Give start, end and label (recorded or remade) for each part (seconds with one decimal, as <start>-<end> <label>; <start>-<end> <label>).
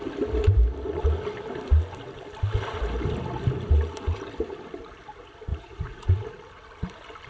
0.0-5.5 recorded; 5.5-6.3 remade; 6.3-7.3 recorded